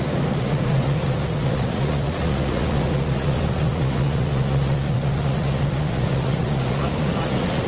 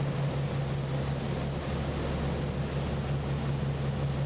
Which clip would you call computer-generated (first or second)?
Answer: first